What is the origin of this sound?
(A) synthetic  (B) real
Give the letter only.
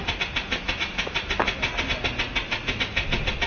B